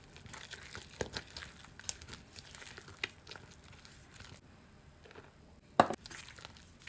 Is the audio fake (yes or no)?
no